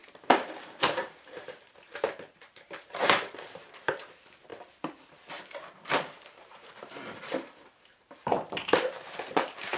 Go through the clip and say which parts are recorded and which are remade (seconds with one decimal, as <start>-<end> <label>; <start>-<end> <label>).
0.0-9.8 remade